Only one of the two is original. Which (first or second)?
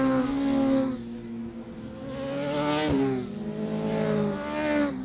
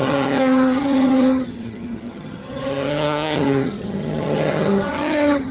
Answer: first